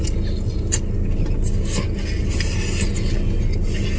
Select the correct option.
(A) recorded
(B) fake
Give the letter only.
A